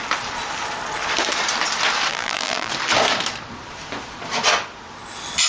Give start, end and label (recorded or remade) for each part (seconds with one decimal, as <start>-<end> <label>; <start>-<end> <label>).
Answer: 0.0-2.1 recorded; 2.1-2.7 remade; 2.7-5.5 recorded